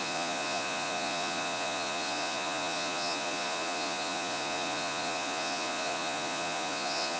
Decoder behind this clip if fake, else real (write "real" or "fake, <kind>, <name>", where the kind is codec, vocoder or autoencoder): fake, vocoder, Vocos